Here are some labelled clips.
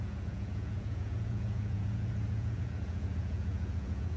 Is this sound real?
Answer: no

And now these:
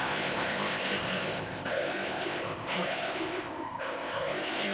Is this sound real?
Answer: no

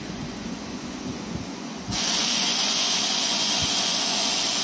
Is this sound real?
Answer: no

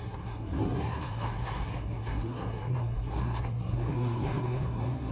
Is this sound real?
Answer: no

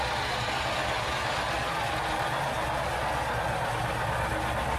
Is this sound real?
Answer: yes